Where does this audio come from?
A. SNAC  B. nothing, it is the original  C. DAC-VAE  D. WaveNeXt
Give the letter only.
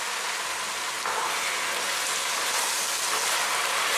B